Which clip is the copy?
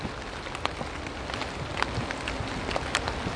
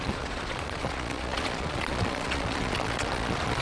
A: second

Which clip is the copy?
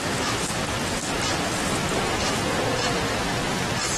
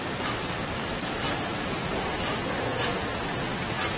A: second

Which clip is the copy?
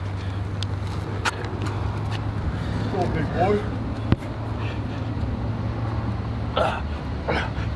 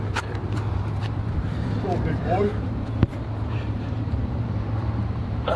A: second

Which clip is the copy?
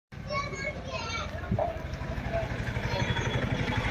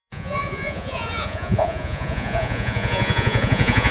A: second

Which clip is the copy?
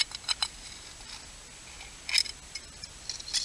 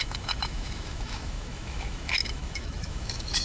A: second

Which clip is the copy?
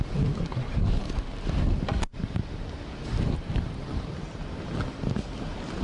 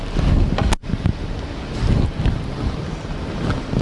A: first